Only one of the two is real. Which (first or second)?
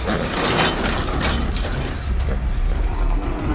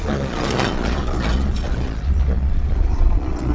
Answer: first